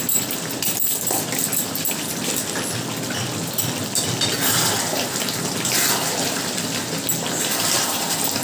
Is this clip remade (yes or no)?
no